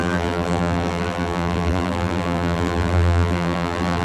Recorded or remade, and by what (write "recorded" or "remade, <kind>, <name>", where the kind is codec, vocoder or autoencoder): remade, vocoder, BigVGAN v2